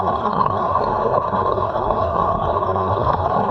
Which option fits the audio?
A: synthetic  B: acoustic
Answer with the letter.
A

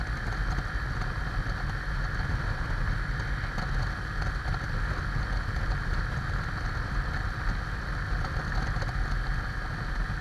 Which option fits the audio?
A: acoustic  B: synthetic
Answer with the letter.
A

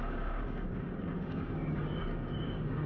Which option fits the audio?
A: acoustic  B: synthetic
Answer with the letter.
B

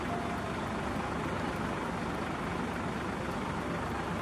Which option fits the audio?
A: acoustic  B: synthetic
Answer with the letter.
A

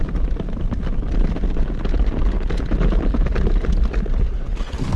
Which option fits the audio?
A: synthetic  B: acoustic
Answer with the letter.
B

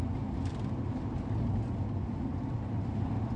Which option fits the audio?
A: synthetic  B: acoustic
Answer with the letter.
B